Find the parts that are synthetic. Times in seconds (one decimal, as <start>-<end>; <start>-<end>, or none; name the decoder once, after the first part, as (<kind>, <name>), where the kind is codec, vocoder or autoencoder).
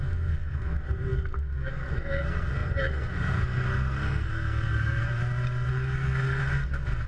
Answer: 0.0-5.1 (codec, SNAC); 5.7-7.1